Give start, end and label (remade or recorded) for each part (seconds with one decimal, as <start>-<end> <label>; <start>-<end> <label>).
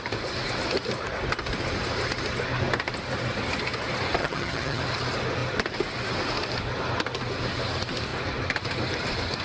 0.0-4.2 recorded; 4.2-4.8 remade; 4.8-9.4 recorded